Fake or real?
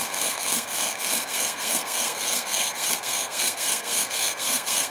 fake